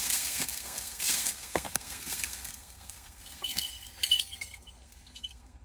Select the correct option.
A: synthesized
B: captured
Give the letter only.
A